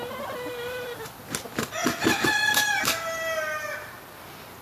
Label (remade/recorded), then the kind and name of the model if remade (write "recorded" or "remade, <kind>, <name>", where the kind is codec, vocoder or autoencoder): recorded